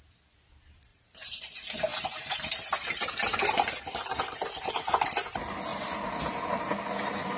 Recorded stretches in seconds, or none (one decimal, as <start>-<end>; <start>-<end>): 0.0-0.9; 1.4-1.9; 4.7-5.7; 6.6-7.4